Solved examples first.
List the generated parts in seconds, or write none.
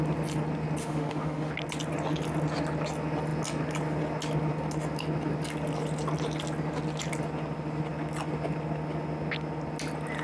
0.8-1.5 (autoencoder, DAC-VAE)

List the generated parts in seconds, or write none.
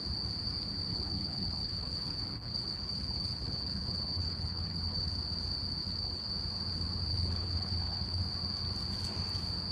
0.9-5.1 (codec, HILCodec); 5.8-6.3; 7.1-8.2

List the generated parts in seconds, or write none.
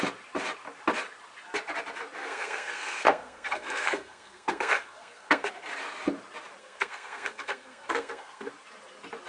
2.2-5.5 (codec, SNAC); 6.6-8.5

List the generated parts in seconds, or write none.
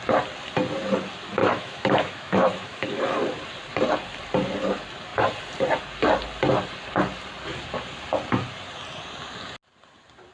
1.4-3.0 (autoencoder, DAC-VAE)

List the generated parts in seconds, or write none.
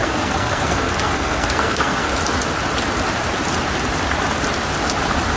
0.0-2.1 (codec, SNAC)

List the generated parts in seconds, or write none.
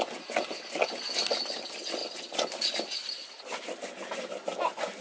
none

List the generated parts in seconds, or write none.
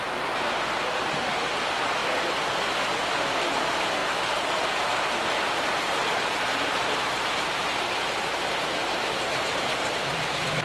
0.0-2.0 (vocoder, BigVGAN v2); 2.9-4.0; 5.6-10.6